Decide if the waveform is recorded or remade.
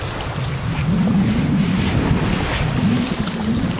recorded